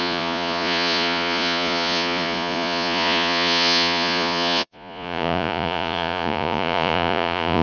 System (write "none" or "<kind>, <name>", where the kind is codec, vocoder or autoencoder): vocoder, Vocos